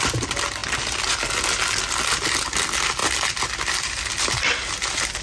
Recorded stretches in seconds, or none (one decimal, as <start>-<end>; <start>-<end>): 0.0-5.2